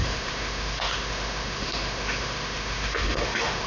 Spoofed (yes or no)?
yes